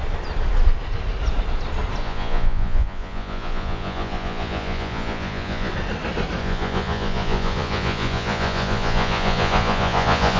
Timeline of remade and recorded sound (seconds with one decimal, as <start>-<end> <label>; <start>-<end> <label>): 0.0-2.0 recorded; 2.0-5.7 remade; 5.7-6.4 recorded; 6.4-10.4 remade